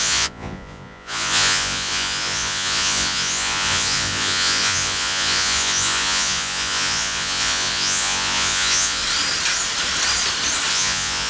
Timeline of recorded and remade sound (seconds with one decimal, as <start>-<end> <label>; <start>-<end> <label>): 0.0-9.0 remade; 9.0-10.7 recorded; 10.7-11.3 remade